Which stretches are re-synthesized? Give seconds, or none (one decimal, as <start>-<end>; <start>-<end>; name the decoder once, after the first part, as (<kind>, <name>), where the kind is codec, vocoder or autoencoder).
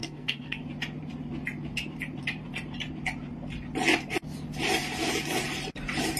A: 0.0-0.6 (codec, SNAC)